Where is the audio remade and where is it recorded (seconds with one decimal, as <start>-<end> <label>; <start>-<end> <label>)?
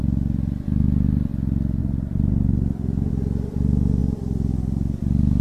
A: 0.0-1.8 recorded; 1.8-3.1 remade; 3.1-5.4 recorded